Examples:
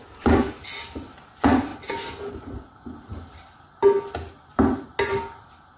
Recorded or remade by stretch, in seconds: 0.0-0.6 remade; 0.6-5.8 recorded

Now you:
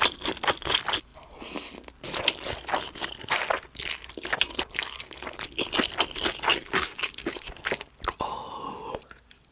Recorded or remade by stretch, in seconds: 0.0-6.5 recorded; 6.5-7.6 remade; 7.6-9.5 recorded

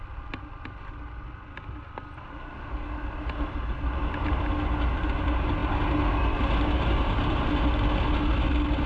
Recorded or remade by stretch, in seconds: 0.0-8.9 recorded

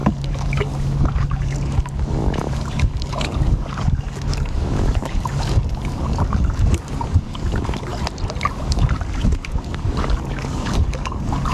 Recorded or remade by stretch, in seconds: 0.0-7.9 remade; 7.9-8.7 recorded; 8.7-11.5 remade

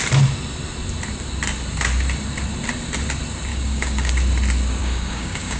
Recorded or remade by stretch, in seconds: 0.0-3.5 recorded; 3.5-4.1 remade; 4.1-4.8 recorded; 4.8-5.6 remade

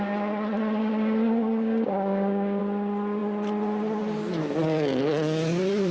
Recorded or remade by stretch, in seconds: 0.0-0.8 recorded; 0.8-2.6 remade; 2.6-5.9 recorded